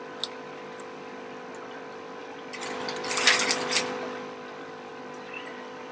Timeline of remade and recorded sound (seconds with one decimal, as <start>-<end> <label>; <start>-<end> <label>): 0.0-5.9 recorded